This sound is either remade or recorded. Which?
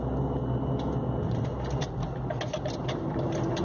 recorded